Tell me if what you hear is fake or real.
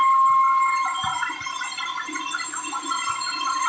real